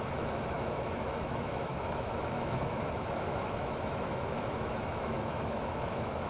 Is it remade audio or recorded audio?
remade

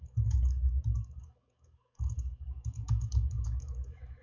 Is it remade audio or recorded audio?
remade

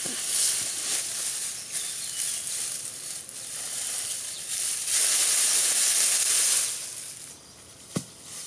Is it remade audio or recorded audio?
recorded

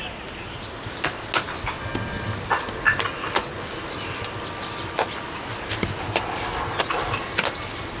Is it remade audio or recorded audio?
recorded